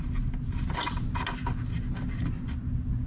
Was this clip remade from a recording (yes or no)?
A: no